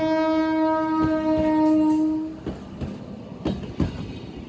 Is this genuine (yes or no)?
yes